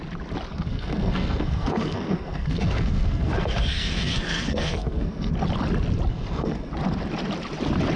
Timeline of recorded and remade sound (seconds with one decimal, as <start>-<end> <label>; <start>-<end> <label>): 0.0-0.5 recorded; 0.5-5.3 remade; 5.3-6.1 recorded; 6.1-6.7 remade; 6.7-8.0 recorded